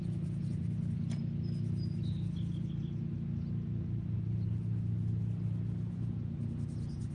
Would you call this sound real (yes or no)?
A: yes